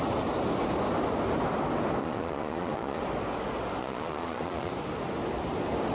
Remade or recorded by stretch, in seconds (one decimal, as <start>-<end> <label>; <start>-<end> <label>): 0.0-2.0 recorded; 2.0-3.0 remade; 3.0-3.8 recorded; 3.8-4.7 remade; 4.7-5.9 recorded

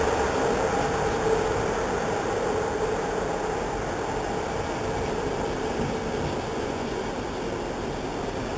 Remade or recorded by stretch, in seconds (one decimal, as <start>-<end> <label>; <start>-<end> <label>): 0.0-6.5 recorded; 6.5-7.0 remade; 7.0-8.6 recorded

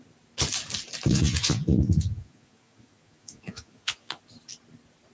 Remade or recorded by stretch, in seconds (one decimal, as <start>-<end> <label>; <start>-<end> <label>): 0.0-1.1 recorded; 1.1-4.2 remade; 4.2-5.1 recorded

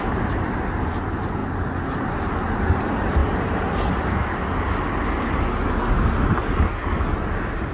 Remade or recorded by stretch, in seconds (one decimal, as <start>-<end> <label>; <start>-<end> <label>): 0.0-7.7 recorded